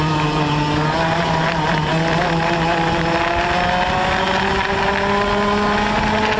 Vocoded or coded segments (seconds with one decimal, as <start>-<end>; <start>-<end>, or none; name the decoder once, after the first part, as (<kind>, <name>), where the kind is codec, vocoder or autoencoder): none